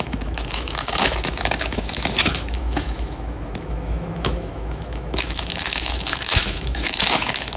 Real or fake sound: fake